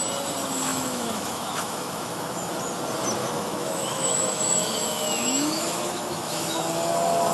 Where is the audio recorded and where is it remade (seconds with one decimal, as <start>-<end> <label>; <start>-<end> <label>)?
0.0-0.7 recorded; 0.7-2.5 remade; 2.5-3.2 recorded; 3.2-6.6 remade; 6.6-7.3 recorded